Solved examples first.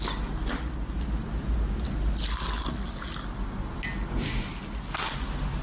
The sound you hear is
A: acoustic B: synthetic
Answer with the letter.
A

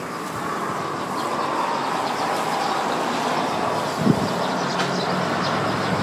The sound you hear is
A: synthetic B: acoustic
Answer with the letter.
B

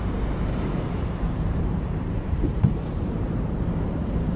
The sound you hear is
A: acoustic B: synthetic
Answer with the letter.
B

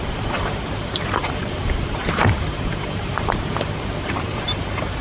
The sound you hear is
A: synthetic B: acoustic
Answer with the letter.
A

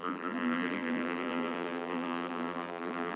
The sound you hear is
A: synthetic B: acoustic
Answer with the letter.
A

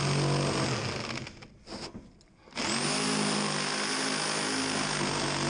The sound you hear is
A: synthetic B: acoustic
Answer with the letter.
B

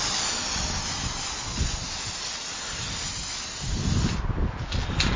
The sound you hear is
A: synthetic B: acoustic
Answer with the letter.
B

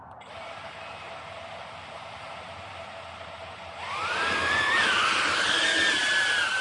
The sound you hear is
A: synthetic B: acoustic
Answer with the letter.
B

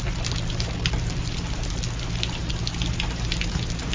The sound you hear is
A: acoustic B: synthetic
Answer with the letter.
A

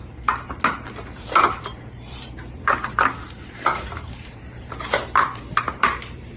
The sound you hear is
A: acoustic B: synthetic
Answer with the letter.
B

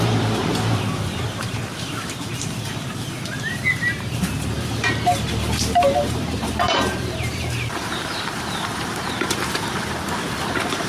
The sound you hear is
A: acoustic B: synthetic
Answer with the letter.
B